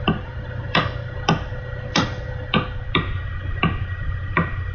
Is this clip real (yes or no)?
no